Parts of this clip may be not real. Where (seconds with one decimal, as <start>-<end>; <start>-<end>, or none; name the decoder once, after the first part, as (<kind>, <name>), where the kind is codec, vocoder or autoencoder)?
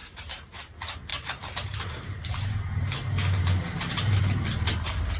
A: 0.0-0.6 (vocoder, BigVGAN v2); 1.1-4.2